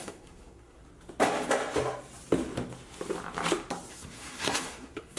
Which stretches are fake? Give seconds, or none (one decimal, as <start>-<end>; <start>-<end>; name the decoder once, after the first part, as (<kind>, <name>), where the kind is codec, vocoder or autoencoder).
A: 0.0-0.8 (codec, SNAC); 3.9-5.2